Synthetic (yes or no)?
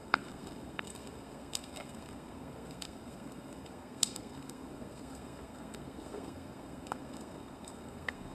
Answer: yes